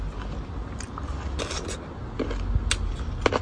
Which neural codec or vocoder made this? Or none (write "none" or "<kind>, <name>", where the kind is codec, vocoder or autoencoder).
none